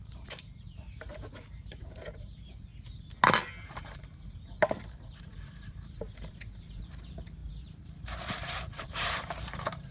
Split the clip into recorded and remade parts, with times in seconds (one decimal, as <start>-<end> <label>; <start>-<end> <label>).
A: 0.0-2.7 remade; 2.7-3.6 recorded; 3.6-9.9 remade